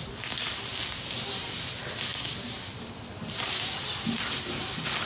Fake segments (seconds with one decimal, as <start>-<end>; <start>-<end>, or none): none